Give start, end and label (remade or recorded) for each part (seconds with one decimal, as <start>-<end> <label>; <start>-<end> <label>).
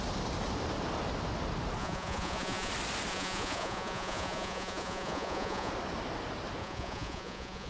0.0-1.8 recorded; 1.8-2.7 remade; 2.7-3.1 recorded; 3.1-5.7 remade; 5.7-6.6 recorded; 6.6-7.7 remade